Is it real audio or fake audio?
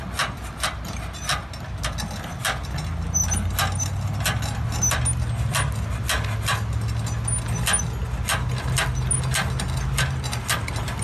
real